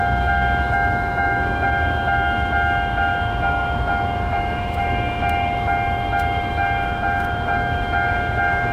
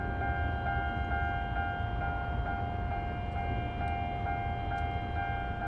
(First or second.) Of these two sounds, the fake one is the first